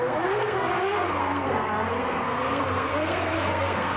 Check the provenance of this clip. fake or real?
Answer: fake